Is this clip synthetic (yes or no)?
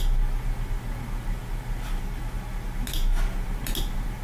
no